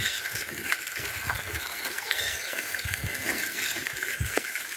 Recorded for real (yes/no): no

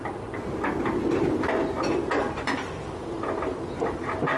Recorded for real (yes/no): yes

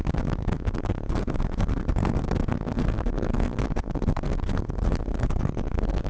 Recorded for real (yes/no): no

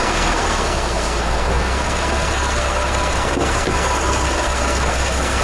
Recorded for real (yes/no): no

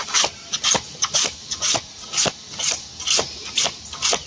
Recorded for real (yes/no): yes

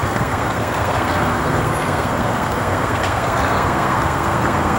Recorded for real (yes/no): no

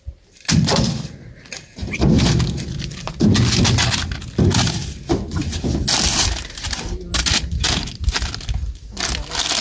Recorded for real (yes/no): yes